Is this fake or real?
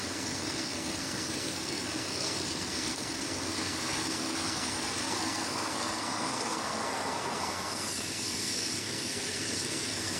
fake